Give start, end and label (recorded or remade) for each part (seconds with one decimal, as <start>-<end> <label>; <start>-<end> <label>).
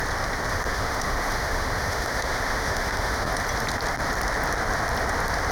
0.0-0.5 recorded; 0.5-3.3 remade; 3.3-5.5 recorded